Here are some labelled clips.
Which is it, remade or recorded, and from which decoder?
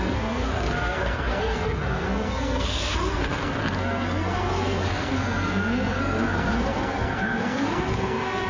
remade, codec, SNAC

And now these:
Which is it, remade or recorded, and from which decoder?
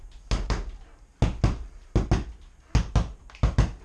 recorded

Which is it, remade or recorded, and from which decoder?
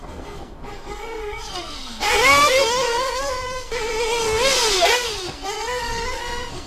remade, codec, SNAC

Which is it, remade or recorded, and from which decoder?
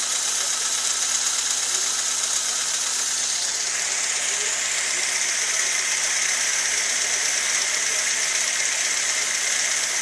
recorded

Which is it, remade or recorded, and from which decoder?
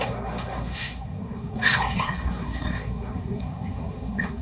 remade, codec, SNAC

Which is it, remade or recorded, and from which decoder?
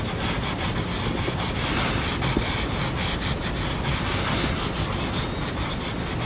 recorded